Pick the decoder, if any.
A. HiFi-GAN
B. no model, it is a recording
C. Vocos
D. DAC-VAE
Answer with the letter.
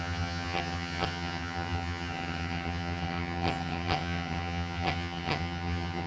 A